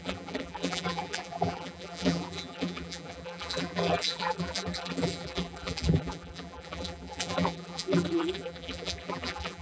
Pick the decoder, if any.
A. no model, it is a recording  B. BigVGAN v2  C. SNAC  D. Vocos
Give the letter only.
B